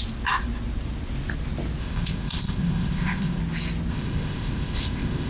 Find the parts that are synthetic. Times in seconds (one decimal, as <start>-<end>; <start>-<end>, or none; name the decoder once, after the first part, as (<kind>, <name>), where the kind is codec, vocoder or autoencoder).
1.8-3.4 (codec, ZipCodec); 3.9-5.3